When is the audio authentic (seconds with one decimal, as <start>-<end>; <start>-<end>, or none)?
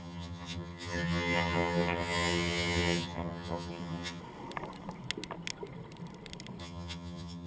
4.2-6.6